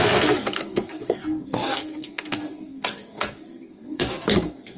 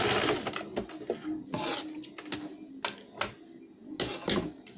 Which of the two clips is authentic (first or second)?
second